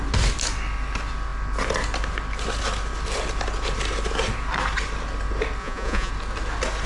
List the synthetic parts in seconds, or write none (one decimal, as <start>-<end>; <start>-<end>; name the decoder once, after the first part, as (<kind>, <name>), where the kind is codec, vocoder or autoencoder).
5.6-6.1 (vocoder, Vocos)